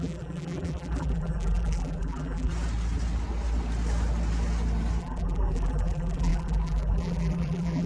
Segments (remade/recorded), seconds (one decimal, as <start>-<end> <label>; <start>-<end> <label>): 0.0-2.5 remade; 2.5-5.0 recorded; 5.0-7.9 remade